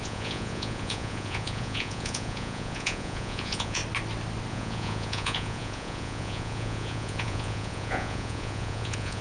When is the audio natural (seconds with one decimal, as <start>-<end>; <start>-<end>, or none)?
3.8-4.5